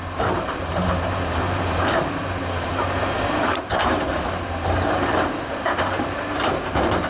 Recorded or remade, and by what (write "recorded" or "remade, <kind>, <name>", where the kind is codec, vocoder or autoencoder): remade, vocoder, BigVGAN v2